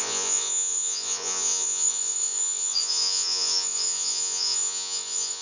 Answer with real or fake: fake